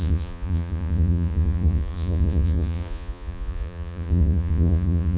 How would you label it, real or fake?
fake